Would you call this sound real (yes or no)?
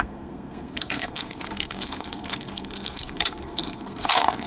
no